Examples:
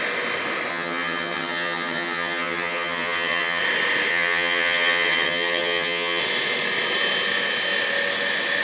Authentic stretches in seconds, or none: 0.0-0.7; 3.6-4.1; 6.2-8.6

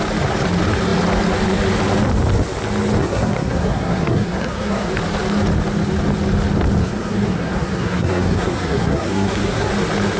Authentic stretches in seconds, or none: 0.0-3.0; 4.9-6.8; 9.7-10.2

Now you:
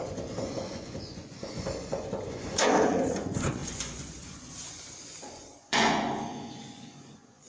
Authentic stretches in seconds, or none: none

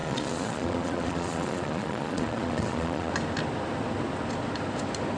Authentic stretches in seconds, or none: 3.1-5.2

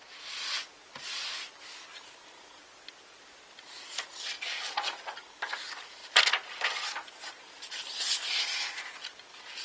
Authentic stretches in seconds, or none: 0.0-9.6

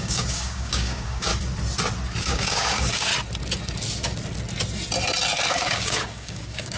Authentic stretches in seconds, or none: 1.3-2.2; 3.1-5.5

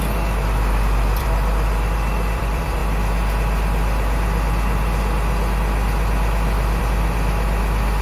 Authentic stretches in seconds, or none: 2.8-6.8